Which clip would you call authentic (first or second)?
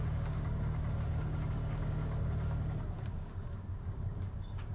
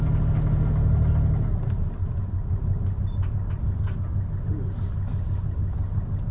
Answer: second